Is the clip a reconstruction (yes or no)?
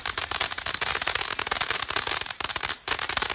yes